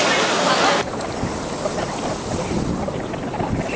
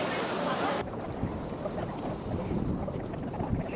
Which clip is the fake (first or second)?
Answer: second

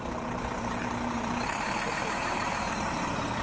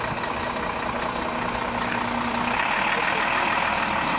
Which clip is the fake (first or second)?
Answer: first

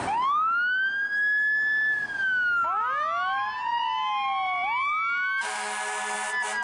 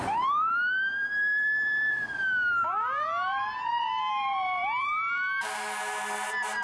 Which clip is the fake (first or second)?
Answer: second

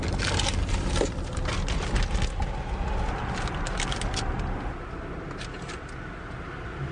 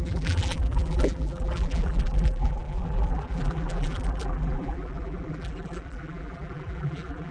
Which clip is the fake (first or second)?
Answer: second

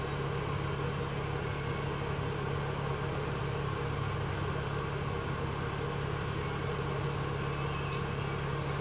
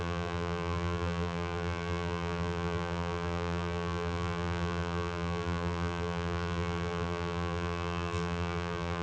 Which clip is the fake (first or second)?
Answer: second